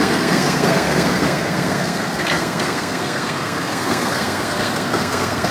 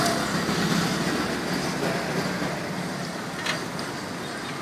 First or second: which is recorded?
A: second